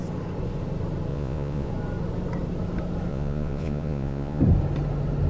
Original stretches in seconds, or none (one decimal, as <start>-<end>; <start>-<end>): 0.0-1.1; 1.7-3.1; 4.4-5.3